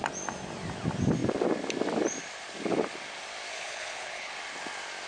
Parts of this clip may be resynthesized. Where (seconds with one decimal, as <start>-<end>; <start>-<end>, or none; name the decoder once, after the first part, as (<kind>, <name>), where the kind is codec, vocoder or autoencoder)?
3.5-4.3 (codec, HILCodec)